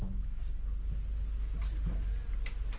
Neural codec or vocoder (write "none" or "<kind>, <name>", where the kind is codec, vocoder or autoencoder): none